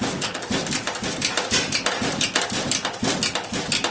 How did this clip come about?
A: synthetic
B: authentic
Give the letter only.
B